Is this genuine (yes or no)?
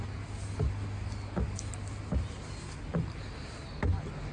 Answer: yes